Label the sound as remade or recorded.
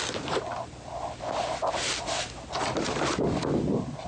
recorded